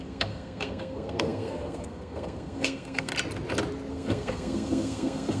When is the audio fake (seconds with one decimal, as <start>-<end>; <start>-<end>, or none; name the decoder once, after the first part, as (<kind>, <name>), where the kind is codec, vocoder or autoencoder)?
0.0-3.1 (codec, SNAC); 3.9-5.4